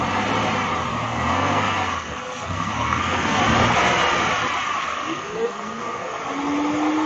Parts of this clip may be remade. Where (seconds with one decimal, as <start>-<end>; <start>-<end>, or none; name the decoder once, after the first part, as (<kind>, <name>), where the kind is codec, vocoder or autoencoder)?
0.9-3.4 (codec, SNAC); 4.8-6.2

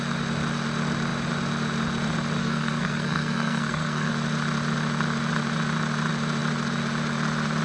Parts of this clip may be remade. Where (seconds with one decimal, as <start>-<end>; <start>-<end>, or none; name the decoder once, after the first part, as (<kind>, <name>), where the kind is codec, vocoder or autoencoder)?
2.4-4.1 (codec, SNAC)

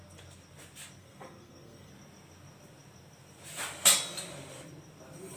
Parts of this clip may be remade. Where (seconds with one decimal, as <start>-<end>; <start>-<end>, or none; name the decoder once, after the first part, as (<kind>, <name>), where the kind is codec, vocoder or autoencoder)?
1.0-1.9 (codec, SNAC)

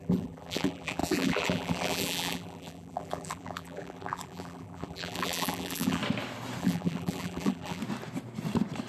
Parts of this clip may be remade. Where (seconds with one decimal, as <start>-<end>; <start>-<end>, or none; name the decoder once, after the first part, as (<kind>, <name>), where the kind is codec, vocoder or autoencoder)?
0.0-6.0 (vocoder, BigVGAN v2); 6.6-7.8

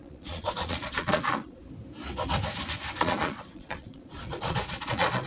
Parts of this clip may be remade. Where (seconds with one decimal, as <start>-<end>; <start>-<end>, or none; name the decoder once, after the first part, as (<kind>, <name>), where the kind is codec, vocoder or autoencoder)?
0.0-1.6 (vocoder, Vocos); 3.0-5.3

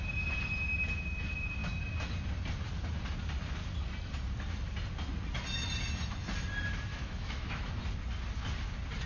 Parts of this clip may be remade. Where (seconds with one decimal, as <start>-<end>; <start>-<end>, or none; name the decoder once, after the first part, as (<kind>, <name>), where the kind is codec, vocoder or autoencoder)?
6.9-7.8 (autoencoder, DAC-VAE)